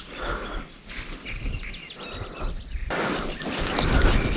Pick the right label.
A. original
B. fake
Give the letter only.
A